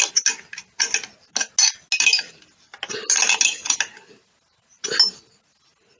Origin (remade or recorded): recorded